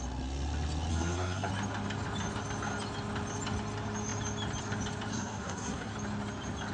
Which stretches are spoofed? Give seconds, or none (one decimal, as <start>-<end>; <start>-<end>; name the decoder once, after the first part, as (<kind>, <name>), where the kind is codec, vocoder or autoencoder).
0.9-1.5 (codec, SNAC); 5.1-5.9

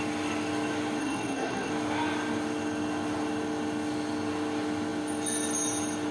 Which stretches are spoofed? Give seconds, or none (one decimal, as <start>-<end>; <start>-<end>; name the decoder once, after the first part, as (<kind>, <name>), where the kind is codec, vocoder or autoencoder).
1.0-1.7 (codec, SNAC)

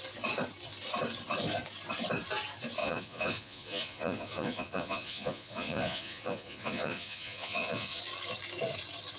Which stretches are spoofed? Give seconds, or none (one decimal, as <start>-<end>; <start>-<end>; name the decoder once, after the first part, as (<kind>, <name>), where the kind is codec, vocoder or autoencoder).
2.8-8.0 (vocoder, Vocos)

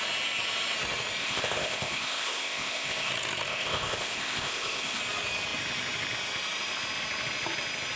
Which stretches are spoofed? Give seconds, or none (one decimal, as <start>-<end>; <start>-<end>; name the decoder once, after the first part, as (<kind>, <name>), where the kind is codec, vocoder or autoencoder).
1.2-3.1 (codec, ZipCodec); 3.5-5.0

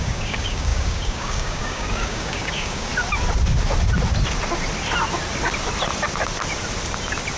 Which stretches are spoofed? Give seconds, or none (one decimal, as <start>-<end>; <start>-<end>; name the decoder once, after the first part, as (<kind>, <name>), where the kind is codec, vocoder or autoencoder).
0.0-2.9 (codec, DAC)

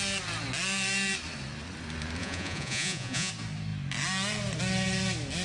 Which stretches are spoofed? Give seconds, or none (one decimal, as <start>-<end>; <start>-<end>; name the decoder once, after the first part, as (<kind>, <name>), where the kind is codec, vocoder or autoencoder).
2.2-3.3 (vocoder, Vocos)